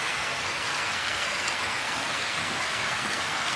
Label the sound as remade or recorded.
remade